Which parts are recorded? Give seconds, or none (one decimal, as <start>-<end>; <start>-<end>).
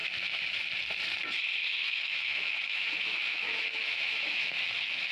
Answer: 0.6-1.6